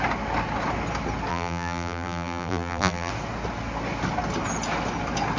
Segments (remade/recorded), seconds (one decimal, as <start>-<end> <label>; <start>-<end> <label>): 0.0-1.3 recorded; 1.3-3.1 remade; 3.1-5.4 recorded